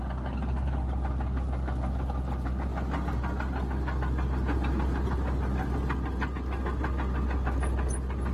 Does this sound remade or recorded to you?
recorded